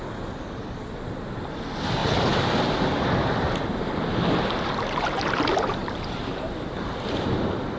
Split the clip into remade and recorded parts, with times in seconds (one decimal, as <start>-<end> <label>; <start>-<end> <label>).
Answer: 0.0-2.0 recorded; 2.0-6.4 remade; 6.4-7.8 recorded